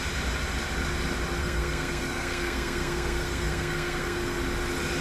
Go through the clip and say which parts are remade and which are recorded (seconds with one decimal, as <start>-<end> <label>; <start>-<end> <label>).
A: 0.0-1.4 recorded; 1.4-4.4 remade; 4.4-5.0 recorded